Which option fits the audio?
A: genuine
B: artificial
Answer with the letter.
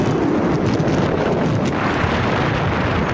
A